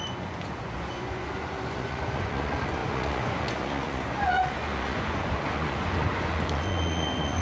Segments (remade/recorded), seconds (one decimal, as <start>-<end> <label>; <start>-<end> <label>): 0.0-7.4 remade